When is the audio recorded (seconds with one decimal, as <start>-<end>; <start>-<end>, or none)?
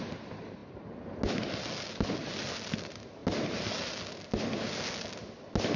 0.0-5.8